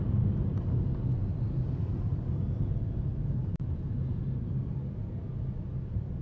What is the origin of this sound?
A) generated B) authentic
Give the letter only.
B